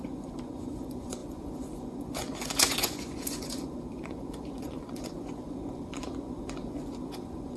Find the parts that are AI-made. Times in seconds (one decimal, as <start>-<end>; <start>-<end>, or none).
0.0-7.6